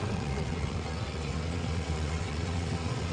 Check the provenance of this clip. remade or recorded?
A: remade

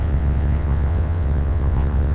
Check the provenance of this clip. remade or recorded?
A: remade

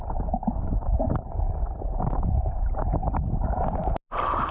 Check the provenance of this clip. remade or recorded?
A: recorded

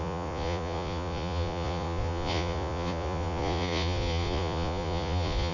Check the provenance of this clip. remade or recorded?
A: remade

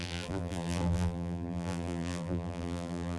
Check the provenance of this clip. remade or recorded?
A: remade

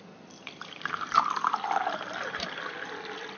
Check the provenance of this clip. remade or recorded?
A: remade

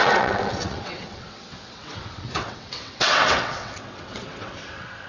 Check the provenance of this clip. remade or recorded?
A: remade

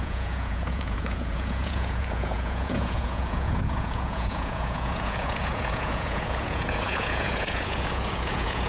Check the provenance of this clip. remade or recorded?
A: remade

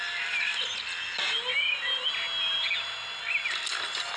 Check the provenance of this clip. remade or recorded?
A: recorded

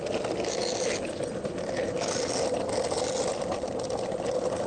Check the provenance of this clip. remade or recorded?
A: recorded